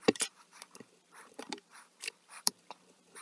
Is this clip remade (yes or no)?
yes